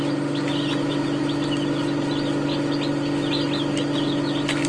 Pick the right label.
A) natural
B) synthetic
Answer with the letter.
A